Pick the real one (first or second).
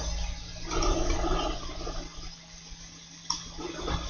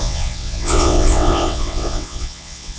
first